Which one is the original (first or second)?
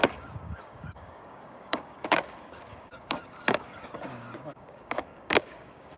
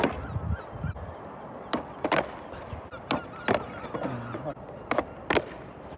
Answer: second